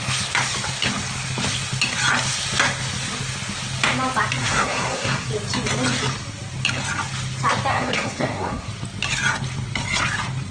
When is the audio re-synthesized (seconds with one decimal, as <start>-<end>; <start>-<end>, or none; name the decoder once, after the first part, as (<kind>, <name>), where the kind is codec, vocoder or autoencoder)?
4.4-5.3 (codec, SNAC); 7.7-8.7